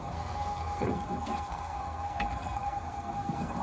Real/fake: fake